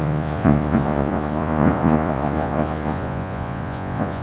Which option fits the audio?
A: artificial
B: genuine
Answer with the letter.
A